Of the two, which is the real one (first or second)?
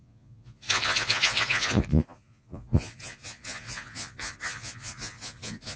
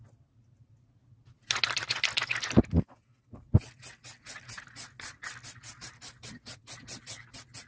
second